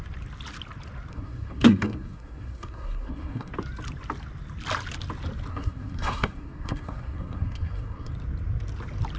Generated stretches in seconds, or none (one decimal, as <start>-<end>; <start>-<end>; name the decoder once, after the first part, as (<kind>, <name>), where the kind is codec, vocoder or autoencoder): 1.1-3.5 (codec, SNAC); 5.5-8.1